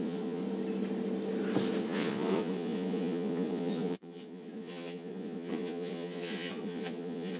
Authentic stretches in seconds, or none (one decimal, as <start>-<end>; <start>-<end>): 0.4-1.8